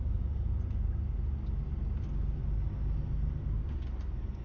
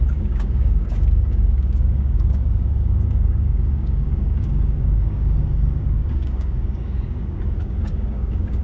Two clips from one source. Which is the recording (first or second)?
first